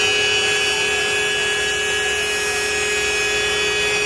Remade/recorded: recorded